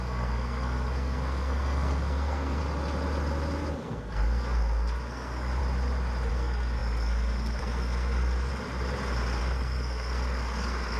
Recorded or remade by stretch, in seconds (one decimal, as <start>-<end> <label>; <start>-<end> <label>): 0.0-2.6 remade; 2.6-3.8 recorded; 3.8-5.6 remade; 5.6-6.3 recorded; 6.3-8.5 remade; 8.5-9.4 recorded; 9.4-11.0 remade